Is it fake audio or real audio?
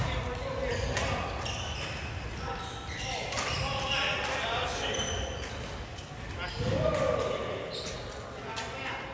real